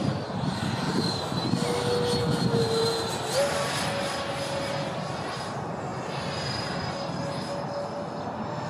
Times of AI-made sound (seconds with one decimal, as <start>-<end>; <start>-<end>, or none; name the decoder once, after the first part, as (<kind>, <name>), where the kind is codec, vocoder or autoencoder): none

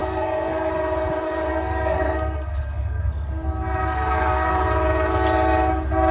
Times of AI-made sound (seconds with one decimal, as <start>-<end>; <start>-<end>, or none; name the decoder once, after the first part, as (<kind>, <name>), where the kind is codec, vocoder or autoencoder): 0.0-0.7 (codec, SNAC); 1.5-3.1; 3.8-4.6